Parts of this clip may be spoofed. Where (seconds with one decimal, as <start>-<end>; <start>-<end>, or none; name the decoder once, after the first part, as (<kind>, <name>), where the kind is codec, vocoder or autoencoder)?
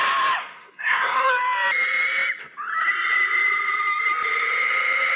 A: 0.4-1.3 (codec, SNAC)